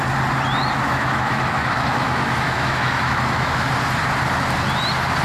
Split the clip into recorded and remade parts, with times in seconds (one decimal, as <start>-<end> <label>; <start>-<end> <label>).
0.0-0.6 recorded; 0.6-3.7 remade; 3.7-5.2 recorded